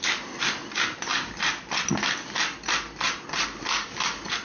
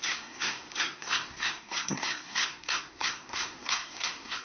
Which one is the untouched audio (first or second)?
first